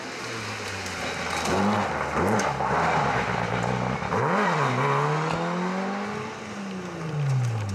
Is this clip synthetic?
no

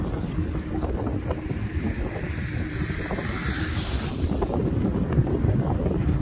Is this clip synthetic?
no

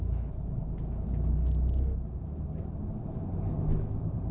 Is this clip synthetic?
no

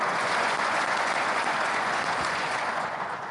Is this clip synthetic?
yes